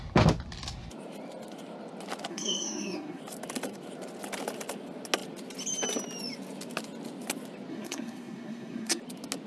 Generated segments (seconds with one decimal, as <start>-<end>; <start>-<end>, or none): 2.3-3.2; 7.7-9.0